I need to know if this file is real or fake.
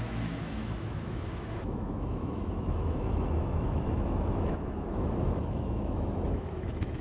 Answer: fake